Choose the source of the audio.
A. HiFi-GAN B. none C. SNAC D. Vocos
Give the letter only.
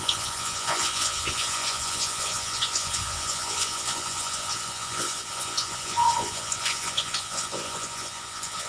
D